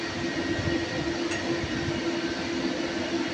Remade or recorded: recorded